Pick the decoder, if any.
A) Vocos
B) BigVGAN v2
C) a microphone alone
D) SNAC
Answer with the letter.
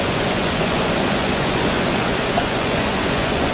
A